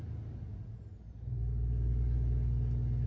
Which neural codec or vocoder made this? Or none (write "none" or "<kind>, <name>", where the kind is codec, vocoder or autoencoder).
none